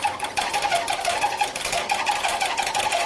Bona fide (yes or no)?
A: yes